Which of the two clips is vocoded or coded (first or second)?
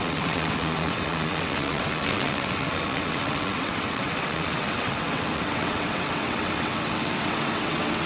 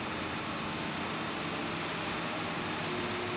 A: first